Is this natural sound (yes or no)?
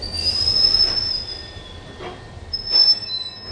yes